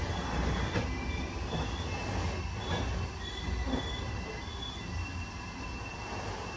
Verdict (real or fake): real